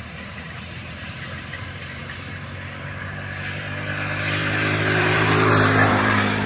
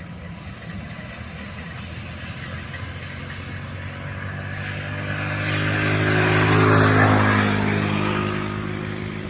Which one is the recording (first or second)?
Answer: second